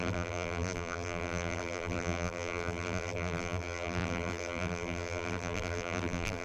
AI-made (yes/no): yes